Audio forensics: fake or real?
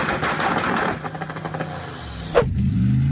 real